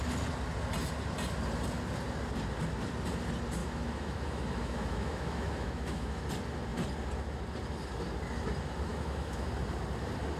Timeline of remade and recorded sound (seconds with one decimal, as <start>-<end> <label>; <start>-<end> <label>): 0.0-3.6 recorded; 3.6-6.2 remade; 6.2-8.9 recorded; 8.9-9.5 remade; 9.5-10.4 recorded